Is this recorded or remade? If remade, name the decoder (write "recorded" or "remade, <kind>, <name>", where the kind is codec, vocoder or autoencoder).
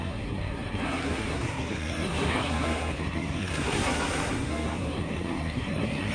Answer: remade, codec, SNAC